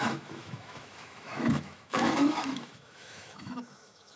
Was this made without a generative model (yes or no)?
no